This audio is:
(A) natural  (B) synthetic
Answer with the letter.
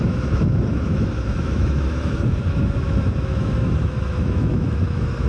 B